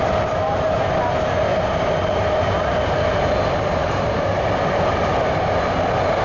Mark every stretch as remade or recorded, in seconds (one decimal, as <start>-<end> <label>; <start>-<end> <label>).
0.0-3.8 recorded; 3.8-4.5 remade; 4.5-6.2 recorded